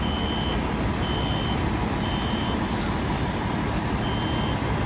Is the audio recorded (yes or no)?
yes